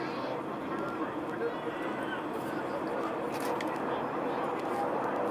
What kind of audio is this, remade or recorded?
recorded